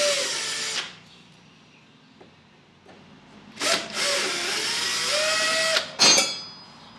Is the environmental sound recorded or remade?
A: recorded